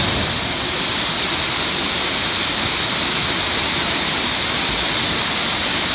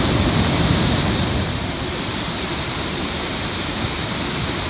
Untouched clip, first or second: first